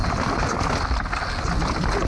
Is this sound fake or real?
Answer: real